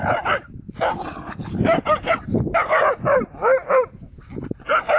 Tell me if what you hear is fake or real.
fake